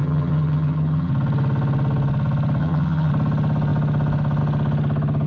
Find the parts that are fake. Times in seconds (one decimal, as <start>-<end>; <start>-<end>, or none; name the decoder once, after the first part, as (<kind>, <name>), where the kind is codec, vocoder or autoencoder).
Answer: 0.0-1.1 (vocoder, HiFi-GAN); 2.6-3.1